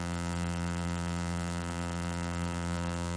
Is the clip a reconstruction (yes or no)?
yes